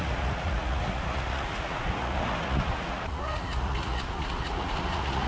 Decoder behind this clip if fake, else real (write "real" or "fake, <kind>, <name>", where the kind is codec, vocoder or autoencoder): fake, vocoder, Vocos